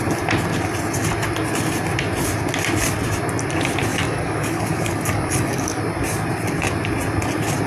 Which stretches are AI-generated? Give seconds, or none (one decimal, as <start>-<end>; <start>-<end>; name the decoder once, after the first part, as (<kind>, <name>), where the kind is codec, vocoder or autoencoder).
3.9-5.8 (codec, DAC)